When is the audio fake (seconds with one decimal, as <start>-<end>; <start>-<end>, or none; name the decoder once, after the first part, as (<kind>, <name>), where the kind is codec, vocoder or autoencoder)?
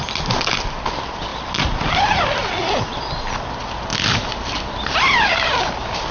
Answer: none